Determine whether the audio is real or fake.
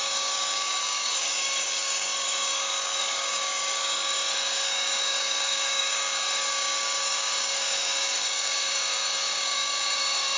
fake